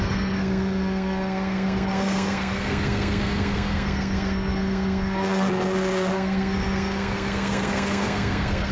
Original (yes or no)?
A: no